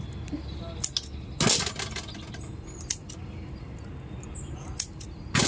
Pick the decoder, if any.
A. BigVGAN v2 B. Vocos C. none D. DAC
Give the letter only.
C